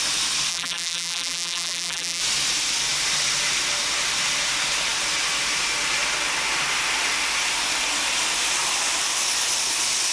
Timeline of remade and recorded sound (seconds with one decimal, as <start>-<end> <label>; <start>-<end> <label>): 0.0-0.5 recorded; 0.5-2.2 remade; 2.2-10.1 recorded